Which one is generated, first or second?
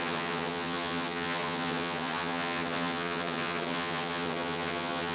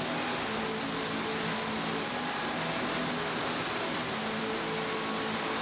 first